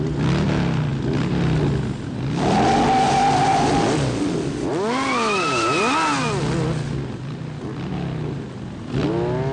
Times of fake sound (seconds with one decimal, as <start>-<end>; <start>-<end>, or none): none